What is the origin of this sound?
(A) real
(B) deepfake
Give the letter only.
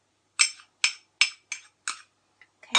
A